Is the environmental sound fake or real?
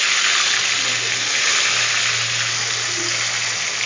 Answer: real